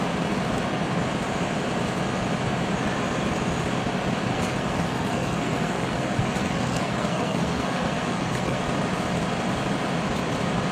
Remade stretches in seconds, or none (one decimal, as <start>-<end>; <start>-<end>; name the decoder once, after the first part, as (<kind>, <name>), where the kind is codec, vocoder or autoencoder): 4.3-8.6 (codec, SNAC)